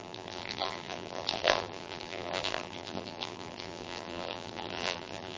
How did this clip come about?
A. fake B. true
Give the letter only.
A